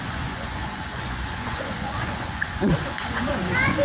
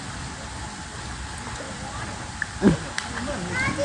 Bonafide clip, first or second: second